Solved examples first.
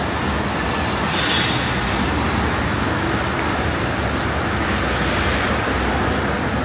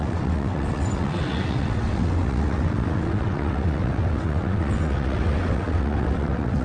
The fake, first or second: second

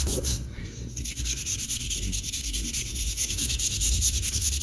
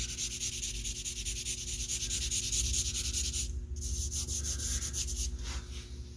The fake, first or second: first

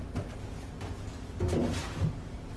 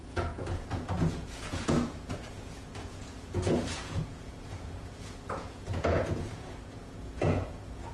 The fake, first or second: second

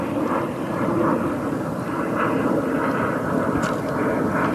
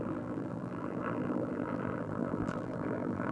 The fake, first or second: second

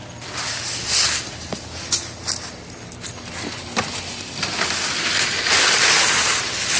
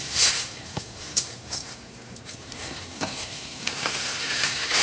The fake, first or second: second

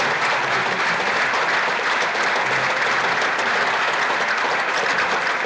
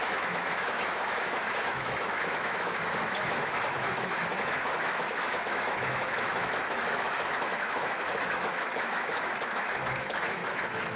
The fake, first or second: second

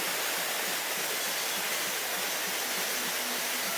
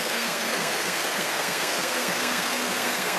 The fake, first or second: second